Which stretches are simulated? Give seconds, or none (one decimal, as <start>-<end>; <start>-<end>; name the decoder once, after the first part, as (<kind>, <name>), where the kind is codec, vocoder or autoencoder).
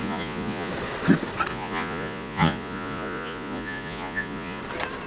0.0-0.7 (vocoder, Vocos); 1.5-4.6